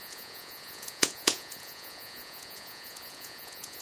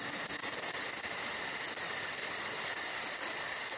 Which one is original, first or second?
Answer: second